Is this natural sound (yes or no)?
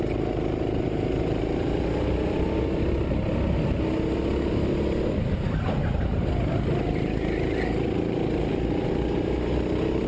yes